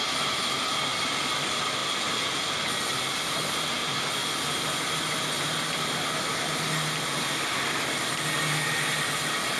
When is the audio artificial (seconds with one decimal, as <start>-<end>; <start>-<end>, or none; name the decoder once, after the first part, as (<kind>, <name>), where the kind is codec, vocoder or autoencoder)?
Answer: none